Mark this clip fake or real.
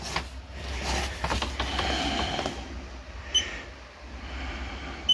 real